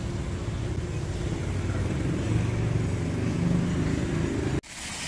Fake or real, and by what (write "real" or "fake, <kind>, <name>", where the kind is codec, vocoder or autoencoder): real